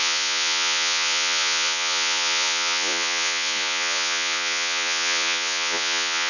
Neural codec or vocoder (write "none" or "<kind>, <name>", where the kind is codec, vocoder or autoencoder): vocoder, Vocos